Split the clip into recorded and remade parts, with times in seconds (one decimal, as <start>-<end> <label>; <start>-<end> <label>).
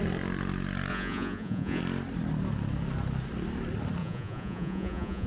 0.0-0.9 recorded; 0.9-1.8 remade; 1.8-4.0 recorded; 4.0-5.3 remade